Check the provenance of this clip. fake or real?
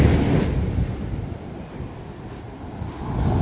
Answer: real